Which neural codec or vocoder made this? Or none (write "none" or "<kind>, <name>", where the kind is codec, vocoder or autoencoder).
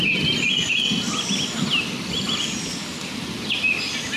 none